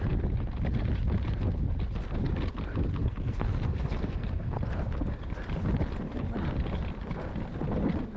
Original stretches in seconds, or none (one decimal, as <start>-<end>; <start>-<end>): 0.0-3.0; 4.6-8.2